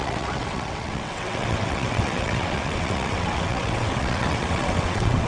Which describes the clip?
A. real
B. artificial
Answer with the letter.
B